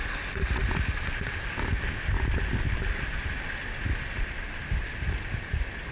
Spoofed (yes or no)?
no